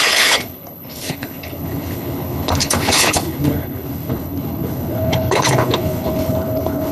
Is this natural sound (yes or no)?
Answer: no